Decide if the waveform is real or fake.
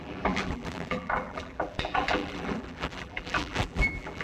fake